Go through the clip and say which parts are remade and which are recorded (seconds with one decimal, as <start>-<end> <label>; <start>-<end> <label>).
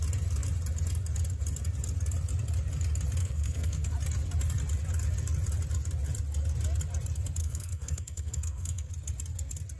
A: 0.0-3.2 recorded; 3.2-3.9 remade; 3.9-7.4 recorded; 7.4-8.9 remade; 8.9-9.8 recorded